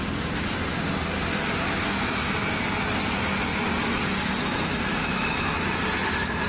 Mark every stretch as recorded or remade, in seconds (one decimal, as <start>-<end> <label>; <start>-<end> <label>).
0.0-1.8 recorded; 1.8-2.6 remade; 2.6-4.9 recorded; 4.9-5.7 remade; 5.7-6.5 recorded